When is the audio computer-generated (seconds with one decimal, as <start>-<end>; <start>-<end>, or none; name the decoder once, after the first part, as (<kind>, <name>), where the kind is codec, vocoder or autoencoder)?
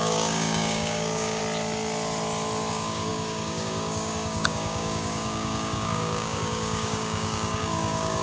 0.0-1.4 (codec, DAC); 2.7-8.2